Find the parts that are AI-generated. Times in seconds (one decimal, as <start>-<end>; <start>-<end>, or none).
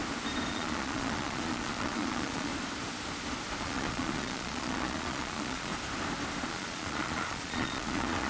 0.5-2.5; 3.6-5.7; 6.5-8.3